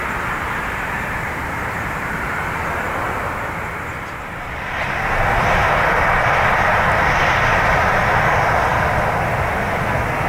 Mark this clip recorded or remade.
recorded